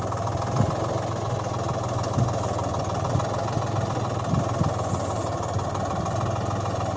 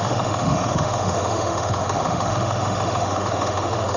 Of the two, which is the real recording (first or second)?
first